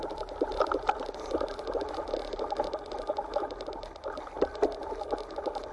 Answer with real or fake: real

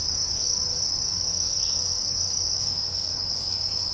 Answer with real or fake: fake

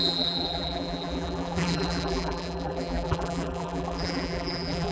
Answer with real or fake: fake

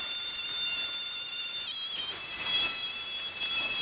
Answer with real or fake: real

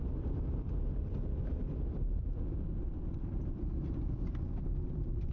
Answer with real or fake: fake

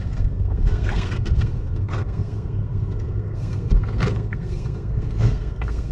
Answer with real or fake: fake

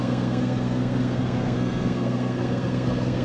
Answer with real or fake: fake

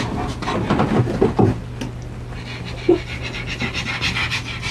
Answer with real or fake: real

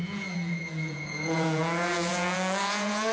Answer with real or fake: fake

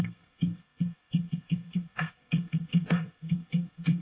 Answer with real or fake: fake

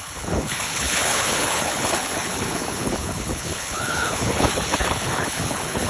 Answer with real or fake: fake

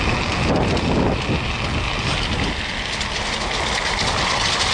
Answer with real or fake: real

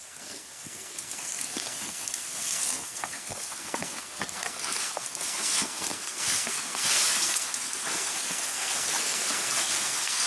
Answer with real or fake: fake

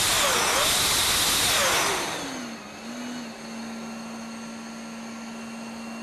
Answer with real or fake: real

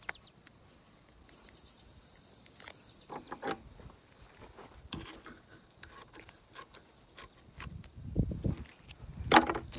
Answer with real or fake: real